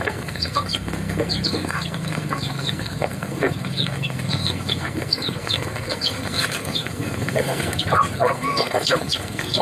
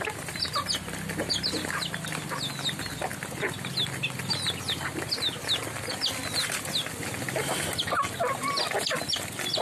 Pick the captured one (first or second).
second